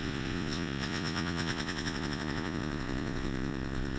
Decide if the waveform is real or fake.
fake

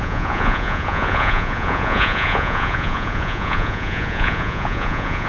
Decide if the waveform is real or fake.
fake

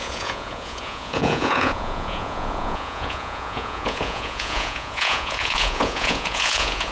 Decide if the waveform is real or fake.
fake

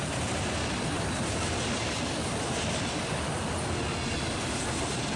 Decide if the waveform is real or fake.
real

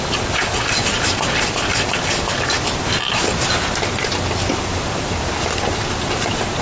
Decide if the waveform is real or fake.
real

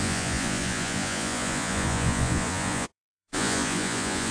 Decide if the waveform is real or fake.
fake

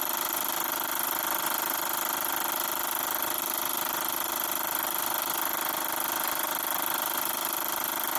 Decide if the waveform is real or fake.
real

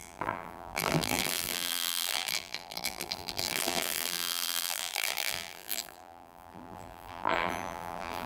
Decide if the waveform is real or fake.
fake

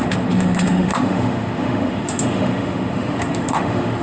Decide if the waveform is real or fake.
fake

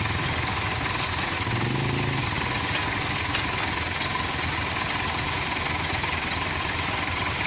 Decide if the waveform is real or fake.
real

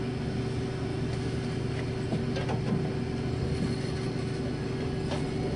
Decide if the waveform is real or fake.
real